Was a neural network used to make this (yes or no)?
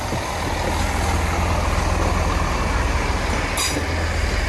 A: no